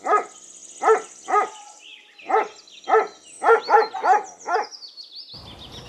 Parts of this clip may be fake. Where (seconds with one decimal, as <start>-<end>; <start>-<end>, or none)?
none